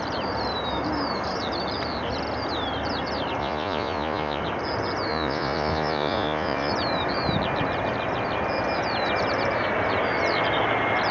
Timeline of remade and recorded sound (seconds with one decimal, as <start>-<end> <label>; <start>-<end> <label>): 0.0-3.4 recorded; 3.4-4.4 remade; 4.4-5.1 recorded; 5.1-6.7 remade; 6.7-11.1 recorded